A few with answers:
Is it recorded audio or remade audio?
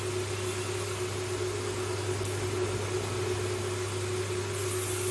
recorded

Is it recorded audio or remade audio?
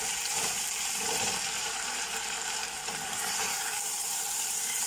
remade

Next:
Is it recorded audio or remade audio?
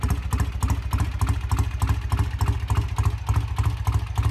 recorded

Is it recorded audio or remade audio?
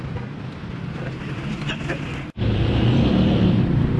remade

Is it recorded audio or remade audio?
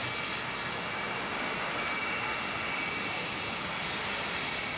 recorded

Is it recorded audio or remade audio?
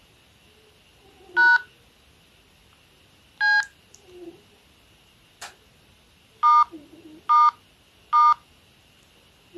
recorded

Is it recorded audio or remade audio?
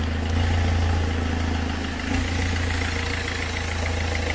recorded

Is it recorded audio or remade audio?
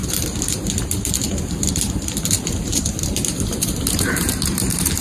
remade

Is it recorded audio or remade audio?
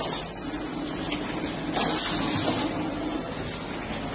recorded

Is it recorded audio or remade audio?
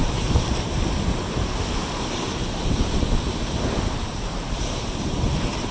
remade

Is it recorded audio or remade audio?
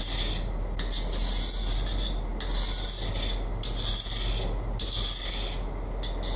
recorded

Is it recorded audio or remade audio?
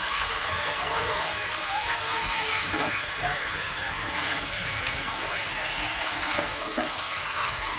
remade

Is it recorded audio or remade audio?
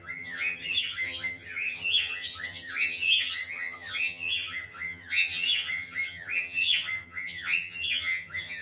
remade